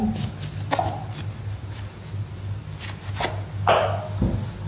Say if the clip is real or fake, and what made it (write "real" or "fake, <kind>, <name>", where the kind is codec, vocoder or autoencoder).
real